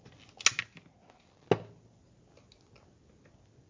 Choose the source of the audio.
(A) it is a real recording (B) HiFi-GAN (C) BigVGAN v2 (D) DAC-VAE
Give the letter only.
A